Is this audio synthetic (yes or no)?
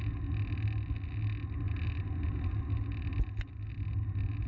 no